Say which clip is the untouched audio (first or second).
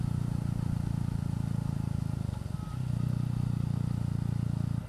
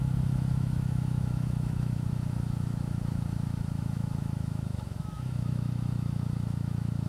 first